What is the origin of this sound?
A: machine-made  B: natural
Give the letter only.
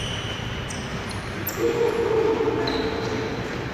B